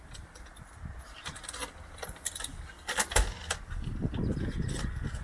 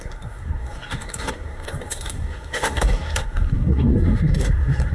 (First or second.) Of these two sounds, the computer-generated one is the second